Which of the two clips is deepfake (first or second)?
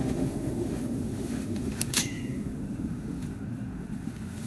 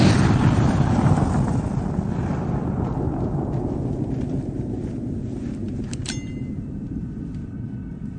first